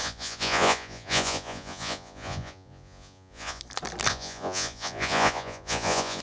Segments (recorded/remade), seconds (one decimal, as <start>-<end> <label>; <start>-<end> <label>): 0.0-3.6 remade; 3.6-4.1 recorded; 4.1-6.2 remade